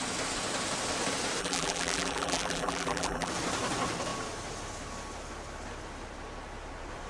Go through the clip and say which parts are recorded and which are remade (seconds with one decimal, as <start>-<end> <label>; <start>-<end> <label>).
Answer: 0.0-1.4 recorded; 1.4-3.3 remade; 3.3-7.1 recorded